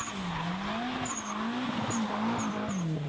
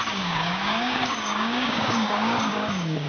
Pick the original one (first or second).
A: first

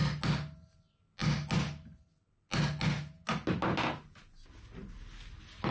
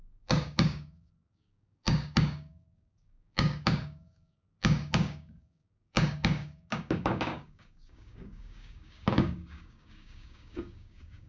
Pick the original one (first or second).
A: first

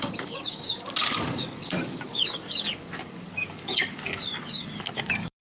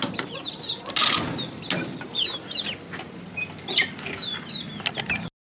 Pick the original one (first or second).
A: second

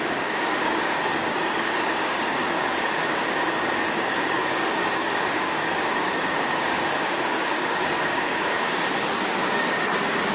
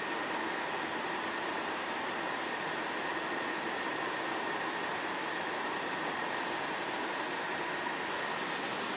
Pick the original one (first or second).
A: second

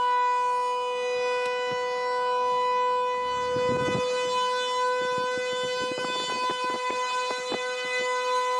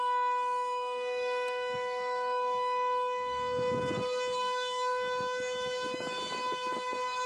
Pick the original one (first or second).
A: first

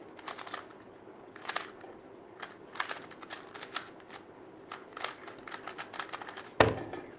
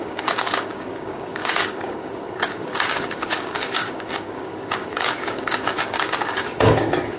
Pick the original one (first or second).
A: first